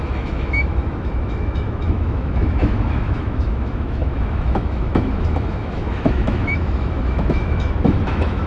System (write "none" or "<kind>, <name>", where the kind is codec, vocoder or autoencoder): autoencoder, DAC-VAE